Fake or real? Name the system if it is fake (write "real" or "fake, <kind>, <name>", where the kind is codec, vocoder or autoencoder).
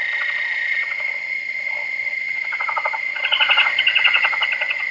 real